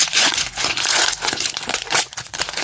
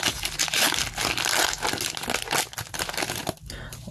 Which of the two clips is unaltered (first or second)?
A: second